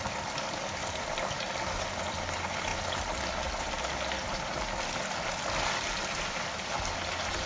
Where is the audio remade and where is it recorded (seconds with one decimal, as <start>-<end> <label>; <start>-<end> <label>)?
0.0-7.5 recorded